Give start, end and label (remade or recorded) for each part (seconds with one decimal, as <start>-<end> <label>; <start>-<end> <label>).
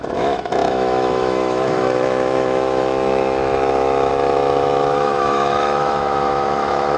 0.0-7.0 remade